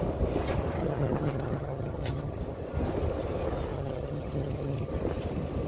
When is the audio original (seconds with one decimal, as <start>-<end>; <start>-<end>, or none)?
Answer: 0.0-0.8; 2.4-3.7; 4.9-5.7